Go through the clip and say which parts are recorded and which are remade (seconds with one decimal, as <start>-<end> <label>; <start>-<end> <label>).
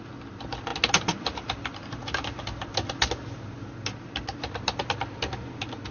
0.0-5.9 recorded